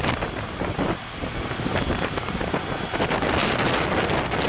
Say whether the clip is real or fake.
real